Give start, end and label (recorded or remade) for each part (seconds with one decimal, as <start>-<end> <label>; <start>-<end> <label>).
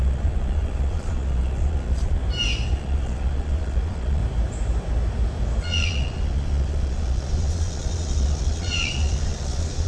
0.0-2.2 remade; 2.2-2.7 recorded; 2.7-4.2 remade; 4.2-5.6 recorded; 5.6-9.9 remade